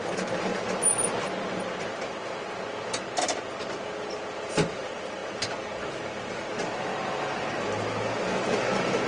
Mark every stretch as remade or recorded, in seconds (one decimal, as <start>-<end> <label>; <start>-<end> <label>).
0.0-9.1 recorded